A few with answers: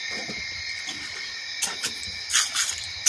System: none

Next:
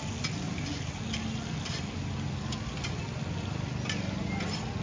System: none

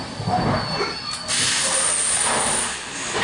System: none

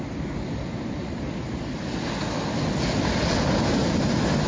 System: none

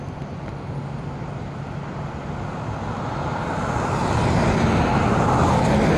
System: none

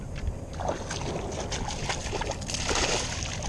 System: none